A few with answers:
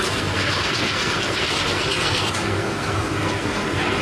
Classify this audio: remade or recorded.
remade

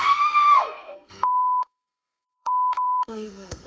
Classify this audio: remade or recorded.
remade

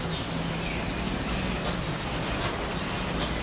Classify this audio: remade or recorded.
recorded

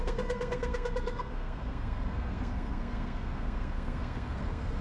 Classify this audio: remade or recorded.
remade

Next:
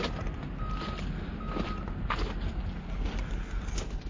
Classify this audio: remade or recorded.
recorded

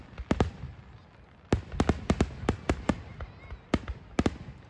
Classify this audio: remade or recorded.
recorded